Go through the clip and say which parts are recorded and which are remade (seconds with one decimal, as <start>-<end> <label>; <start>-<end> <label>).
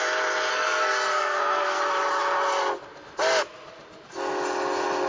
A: 0.0-0.5 recorded; 0.5-1.8 remade; 1.8-5.1 recorded